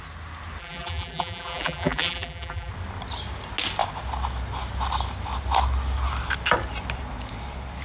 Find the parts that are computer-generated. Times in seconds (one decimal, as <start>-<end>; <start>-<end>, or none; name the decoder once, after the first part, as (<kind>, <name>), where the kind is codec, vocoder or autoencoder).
0.6-2.7 (vocoder, BigVGAN v2)